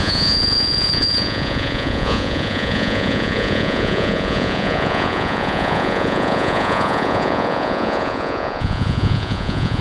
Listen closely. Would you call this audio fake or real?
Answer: fake